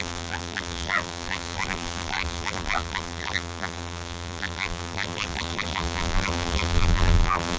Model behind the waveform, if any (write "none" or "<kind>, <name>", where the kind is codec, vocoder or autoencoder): vocoder, BigVGAN v2